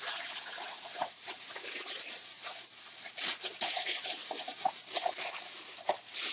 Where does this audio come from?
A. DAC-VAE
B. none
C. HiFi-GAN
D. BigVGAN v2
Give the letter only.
D